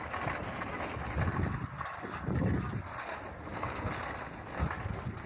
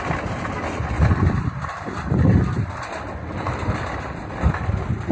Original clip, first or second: first